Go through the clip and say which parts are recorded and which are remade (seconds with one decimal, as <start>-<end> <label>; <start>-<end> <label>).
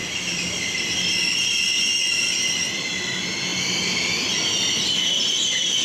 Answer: 0.0-5.8 recorded